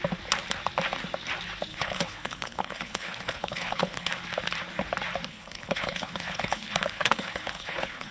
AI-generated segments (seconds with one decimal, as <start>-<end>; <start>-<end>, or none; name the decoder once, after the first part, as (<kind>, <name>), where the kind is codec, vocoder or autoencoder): 1.7-4.1 (codec, HILCodec); 5.3-8.1